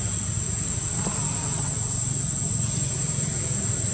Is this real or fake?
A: real